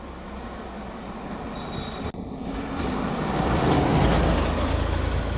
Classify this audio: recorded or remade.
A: recorded